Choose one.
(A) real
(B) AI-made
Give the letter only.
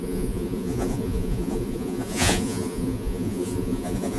B